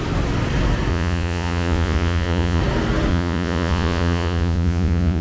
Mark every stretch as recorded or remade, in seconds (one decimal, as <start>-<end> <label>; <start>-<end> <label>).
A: 0.0-0.9 recorded; 0.9-2.6 remade; 2.6-3.1 recorded; 3.1-5.2 remade